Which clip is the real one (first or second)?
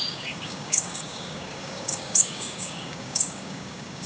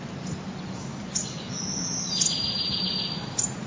second